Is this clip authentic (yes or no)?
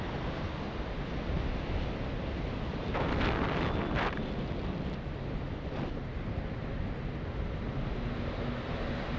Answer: yes